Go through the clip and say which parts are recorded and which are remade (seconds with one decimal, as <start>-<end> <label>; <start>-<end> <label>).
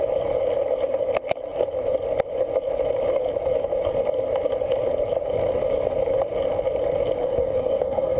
0.0-7.2 recorded; 7.2-8.2 remade